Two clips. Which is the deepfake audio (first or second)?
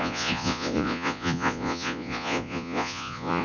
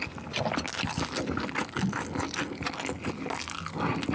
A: first